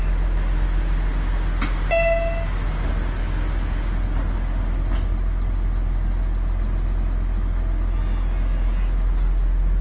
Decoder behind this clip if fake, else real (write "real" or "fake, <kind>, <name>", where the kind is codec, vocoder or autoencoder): real